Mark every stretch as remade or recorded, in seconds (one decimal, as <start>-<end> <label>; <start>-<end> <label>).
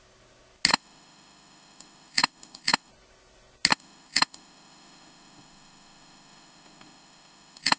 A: 0.0-0.7 recorded; 0.7-2.9 remade; 2.9-3.7 recorded; 3.7-7.8 remade